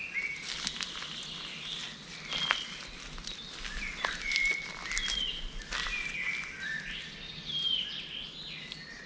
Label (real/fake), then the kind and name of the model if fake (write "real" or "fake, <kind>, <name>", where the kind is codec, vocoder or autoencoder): real